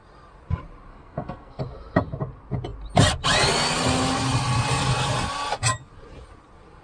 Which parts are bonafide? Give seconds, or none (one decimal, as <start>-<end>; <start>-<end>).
0.0-0.9; 1.6-6.8